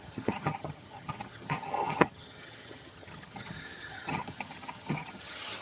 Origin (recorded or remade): remade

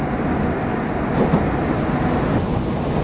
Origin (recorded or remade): recorded